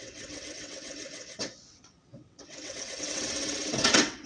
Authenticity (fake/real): fake